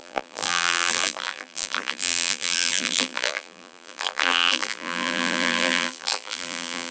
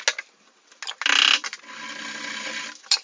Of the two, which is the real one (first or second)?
second